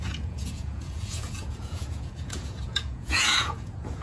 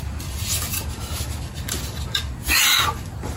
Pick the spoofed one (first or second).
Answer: first